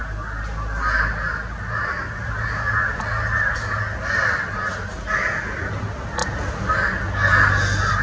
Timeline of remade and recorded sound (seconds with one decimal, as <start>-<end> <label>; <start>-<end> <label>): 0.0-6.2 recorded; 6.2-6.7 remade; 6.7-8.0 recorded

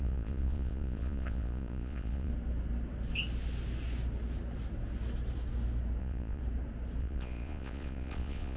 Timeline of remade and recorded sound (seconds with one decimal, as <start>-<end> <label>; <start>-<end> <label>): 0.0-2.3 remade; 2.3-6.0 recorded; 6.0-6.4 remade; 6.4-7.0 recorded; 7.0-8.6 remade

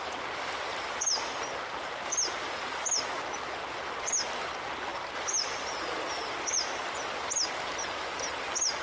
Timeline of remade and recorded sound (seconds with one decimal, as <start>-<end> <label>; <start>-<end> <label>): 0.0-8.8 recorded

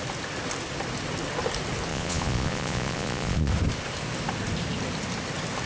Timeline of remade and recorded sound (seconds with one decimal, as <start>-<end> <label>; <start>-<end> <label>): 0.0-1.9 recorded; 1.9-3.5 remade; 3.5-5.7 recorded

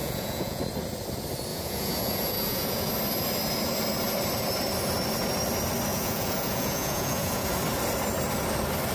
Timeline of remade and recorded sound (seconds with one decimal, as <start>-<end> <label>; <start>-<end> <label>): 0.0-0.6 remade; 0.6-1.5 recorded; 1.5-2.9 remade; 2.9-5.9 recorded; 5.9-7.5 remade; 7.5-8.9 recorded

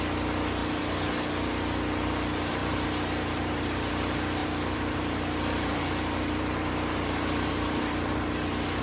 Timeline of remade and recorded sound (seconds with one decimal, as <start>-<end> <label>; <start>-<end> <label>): 0.0-2.6 recorded; 2.6-3.9 remade; 3.9-4.4 recorded; 4.4-8.8 remade